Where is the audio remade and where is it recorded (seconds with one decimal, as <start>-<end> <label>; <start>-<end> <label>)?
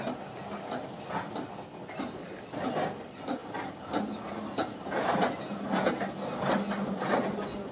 0.0-7.7 recorded